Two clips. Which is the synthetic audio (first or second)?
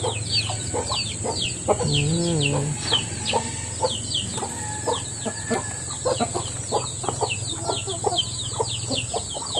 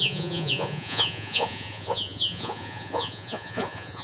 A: second